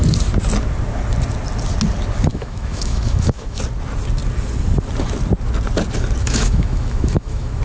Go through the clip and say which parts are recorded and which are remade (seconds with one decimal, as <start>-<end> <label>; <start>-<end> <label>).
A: 0.0-2.3 recorded; 2.3-3.6 remade; 3.6-6.2 recorded; 6.2-7.6 remade